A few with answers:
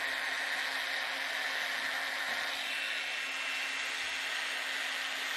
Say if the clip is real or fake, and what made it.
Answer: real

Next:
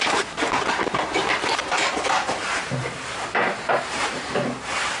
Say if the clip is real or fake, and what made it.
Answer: fake, vocoder, BigVGAN v2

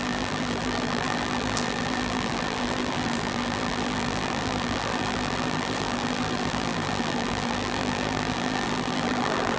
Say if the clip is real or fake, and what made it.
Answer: fake, vocoder, BigVGAN v2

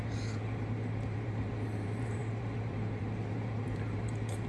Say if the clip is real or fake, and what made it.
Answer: fake, vocoder, BigVGAN v2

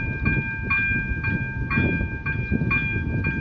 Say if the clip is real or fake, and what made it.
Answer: real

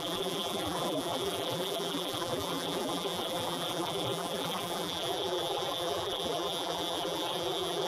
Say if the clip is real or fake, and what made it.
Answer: fake, vocoder, BigVGAN v2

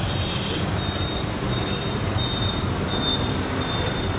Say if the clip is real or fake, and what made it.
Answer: fake, vocoder, BigVGAN v2